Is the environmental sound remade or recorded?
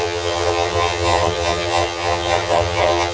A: remade